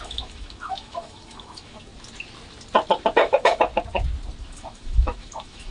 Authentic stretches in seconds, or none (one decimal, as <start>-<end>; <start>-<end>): 1.9-3.2; 3.7-4.4